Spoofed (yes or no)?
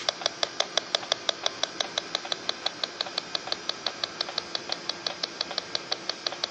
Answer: yes